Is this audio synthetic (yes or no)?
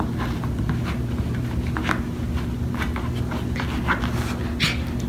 no